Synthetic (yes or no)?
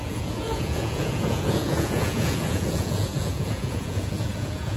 yes